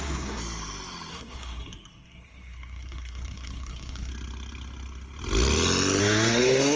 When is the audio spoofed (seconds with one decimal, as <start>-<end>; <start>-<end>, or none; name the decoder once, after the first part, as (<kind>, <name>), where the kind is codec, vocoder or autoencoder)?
0.0-0.4 (codec, SNAC); 1.1-4.1; 6.0-6.8